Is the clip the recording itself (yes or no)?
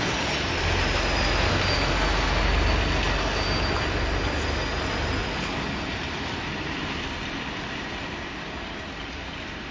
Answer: yes